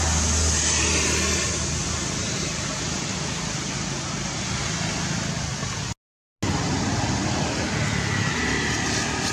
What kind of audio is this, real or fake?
real